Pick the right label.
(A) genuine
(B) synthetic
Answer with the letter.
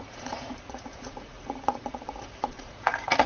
B